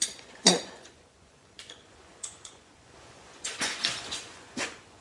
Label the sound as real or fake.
fake